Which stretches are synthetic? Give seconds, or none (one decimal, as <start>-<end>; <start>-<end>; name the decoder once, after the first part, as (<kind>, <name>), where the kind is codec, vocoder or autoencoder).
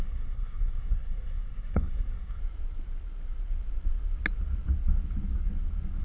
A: 0.0-2.4 (codec, SNAC)